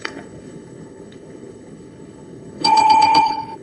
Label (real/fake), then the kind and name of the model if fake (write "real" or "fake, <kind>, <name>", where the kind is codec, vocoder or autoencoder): fake, codec, HILCodec